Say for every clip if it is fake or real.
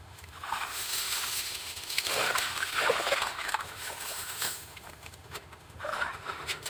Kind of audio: fake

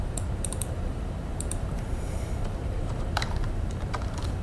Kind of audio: fake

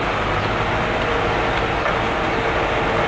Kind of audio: real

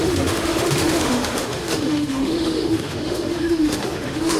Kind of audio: fake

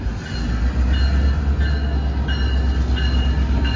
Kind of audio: real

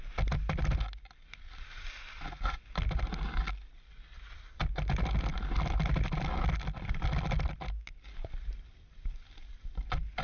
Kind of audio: real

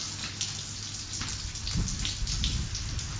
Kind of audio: real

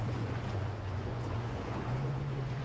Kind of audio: fake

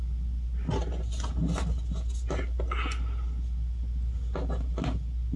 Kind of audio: real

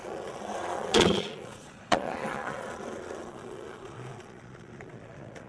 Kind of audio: fake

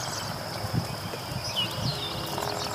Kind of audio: real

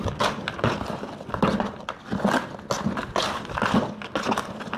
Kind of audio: real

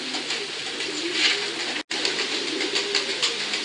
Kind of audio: real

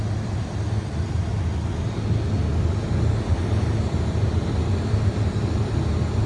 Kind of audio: real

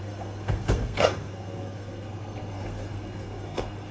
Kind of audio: fake